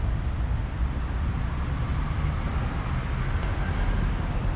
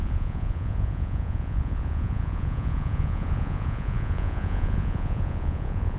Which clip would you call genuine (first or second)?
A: first